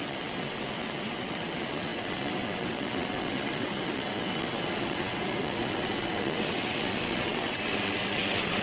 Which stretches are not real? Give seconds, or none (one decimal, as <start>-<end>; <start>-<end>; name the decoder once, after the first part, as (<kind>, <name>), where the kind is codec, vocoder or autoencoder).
0.0-8.6 (vocoder, WaveNeXt)